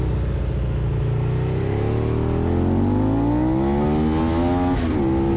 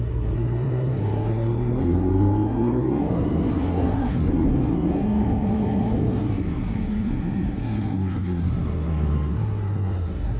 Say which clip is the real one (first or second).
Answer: first